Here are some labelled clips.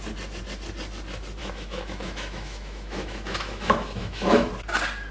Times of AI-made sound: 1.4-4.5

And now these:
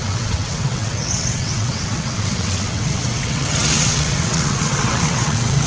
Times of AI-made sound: 0.0-5.7

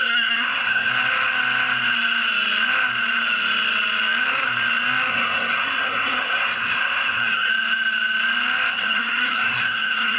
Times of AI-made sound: 0.0-0.9; 5.1-7.5; 8.7-10.2

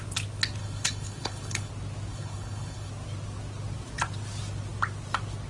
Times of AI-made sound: 0.6-1.7; 2.1-2.9

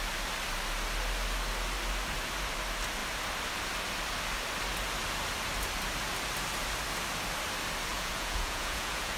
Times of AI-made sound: 7.9-9.2

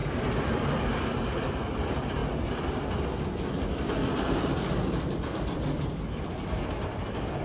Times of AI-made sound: 0.0-0.8; 4.0-7.4